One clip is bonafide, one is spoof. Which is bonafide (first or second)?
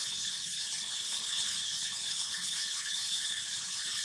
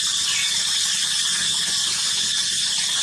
second